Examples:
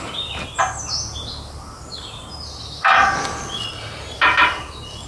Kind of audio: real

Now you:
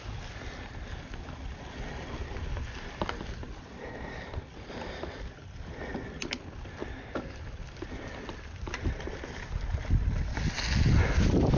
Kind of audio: real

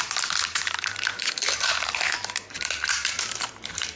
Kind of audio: fake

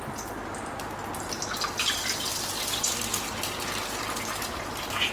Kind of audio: real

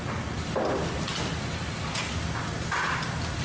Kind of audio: real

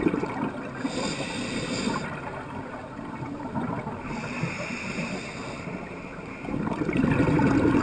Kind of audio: real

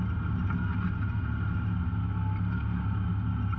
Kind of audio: real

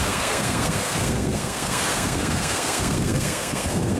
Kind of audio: fake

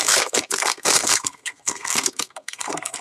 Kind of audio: fake